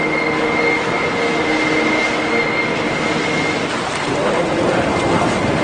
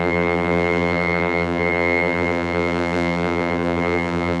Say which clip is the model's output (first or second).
second